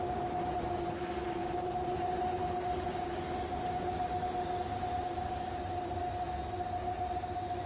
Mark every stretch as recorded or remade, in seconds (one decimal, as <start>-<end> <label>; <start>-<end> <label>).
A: 0.0-7.7 recorded